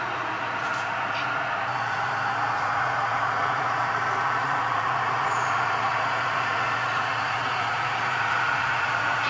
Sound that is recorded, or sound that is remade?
remade